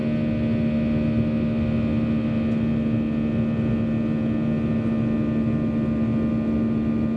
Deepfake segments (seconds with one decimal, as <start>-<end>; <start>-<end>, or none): none